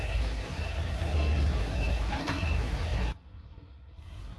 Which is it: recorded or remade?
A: remade